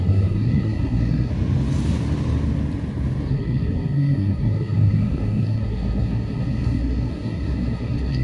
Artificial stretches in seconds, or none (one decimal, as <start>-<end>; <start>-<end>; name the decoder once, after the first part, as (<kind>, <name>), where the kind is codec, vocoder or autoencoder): 0.0-1.3 (codec, SNAC); 3.3-8.2